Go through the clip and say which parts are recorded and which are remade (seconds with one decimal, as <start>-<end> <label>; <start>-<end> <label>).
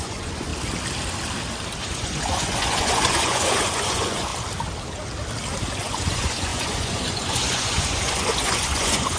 0.0-0.5 remade; 0.5-1.8 recorded; 1.8-4.3 remade; 4.3-5.8 recorded; 5.8-9.2 remade